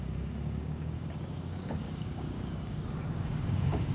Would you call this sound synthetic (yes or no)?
yes